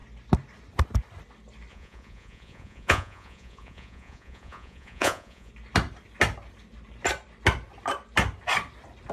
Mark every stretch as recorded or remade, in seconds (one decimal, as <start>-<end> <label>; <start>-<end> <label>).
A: 0.0-1.7 recorded; 1.7-5.5 remade; 5.5-9.1 recorded